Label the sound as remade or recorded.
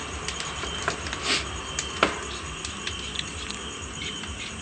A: recorded